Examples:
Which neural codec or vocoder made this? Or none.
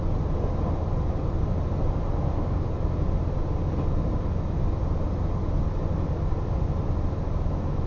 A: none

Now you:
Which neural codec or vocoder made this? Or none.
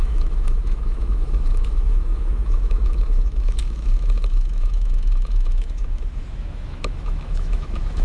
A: autoencoder, DAC-VAE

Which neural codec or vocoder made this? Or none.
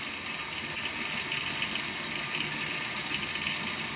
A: none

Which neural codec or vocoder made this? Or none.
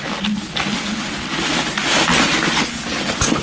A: none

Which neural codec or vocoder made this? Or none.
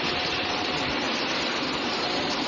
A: vocoder, BigVGAN v2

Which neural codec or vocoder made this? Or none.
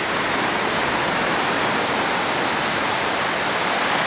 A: none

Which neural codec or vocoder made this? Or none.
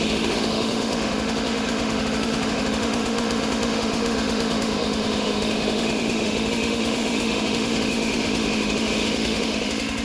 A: autoencoder, DAC-VAE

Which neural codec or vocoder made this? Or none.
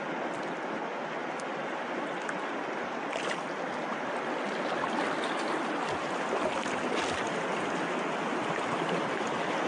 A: none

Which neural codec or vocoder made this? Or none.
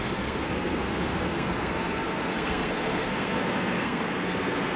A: codec, SNAC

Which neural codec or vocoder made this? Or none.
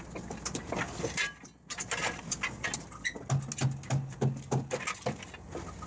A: none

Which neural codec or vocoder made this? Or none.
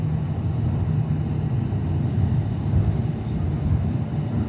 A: none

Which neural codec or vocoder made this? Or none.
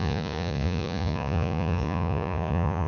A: vocoder, Vocos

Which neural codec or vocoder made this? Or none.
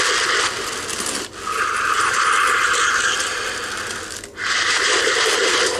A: none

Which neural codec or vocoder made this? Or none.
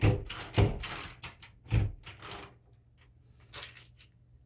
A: none